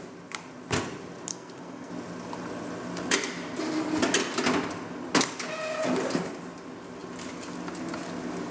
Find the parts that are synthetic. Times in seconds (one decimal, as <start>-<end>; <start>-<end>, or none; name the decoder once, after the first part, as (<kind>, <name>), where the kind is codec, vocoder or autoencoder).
1.3-1.9 (codec, SNAC)